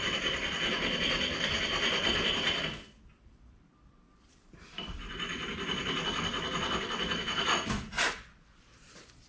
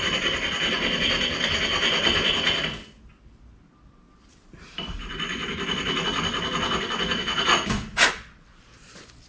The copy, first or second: first